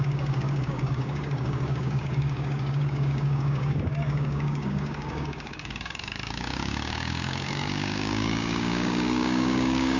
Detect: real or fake fake